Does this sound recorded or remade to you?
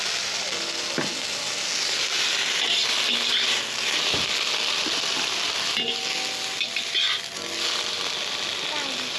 recorded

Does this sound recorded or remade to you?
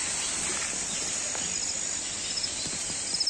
recorded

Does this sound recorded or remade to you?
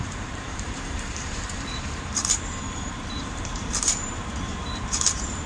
remade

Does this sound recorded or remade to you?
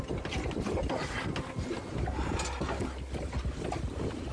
recorded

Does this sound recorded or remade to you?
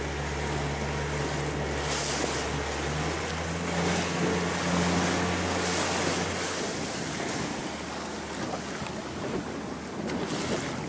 recorded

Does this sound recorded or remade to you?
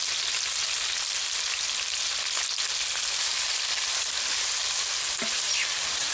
recorded